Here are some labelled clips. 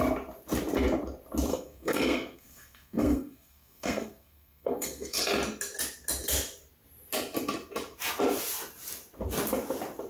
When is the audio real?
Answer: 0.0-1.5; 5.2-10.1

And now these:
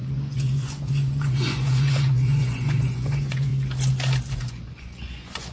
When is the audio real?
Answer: 3.5-4.3

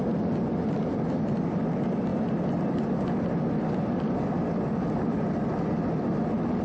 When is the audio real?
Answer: 0.0-6.6

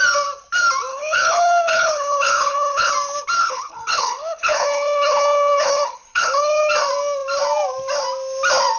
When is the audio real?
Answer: 0.0-0.9; 2.9-3.4; 6.7-8.8

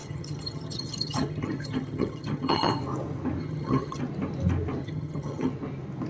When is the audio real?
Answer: 2.7-3.4; 4.0-4.8; 5.5-6.1

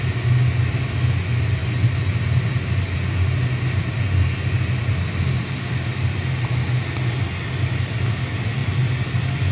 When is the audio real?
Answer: 0.0-9.5